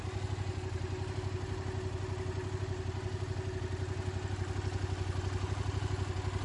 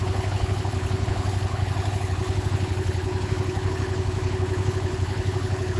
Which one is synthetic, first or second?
second